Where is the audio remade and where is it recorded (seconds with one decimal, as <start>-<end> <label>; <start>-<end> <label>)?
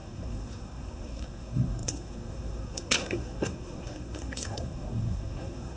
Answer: 0.0-5.8 remade